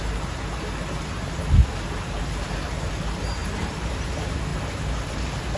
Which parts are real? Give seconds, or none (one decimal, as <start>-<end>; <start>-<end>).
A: 0.0-5.6